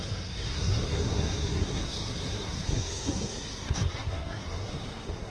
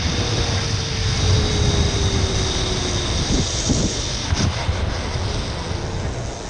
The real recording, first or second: second